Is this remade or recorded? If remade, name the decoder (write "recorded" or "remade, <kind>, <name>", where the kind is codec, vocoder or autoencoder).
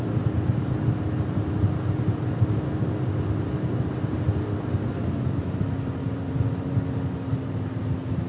recorded